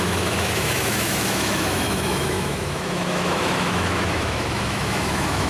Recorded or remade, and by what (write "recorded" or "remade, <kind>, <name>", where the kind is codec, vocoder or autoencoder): remade, autoencoder, DAC-VAE